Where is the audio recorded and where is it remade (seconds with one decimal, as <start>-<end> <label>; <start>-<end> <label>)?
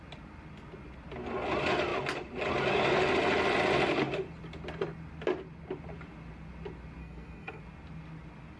0.0-7.0 recorded; 7.0-7.6 remade; 7.6-8.6 recorded